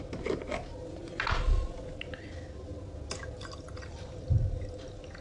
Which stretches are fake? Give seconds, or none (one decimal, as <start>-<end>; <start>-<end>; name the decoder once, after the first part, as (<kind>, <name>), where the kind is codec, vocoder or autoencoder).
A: none